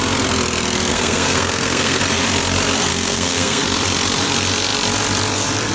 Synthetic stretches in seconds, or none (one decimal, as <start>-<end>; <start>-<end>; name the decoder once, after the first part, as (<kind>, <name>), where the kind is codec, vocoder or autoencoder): 0.9-2.0 (codec, SNAC); 2.9-3.6